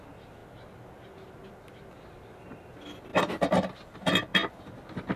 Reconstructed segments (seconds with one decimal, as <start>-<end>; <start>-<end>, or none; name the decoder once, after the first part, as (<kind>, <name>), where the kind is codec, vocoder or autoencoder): none